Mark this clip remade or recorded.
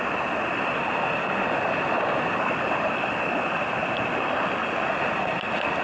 recorded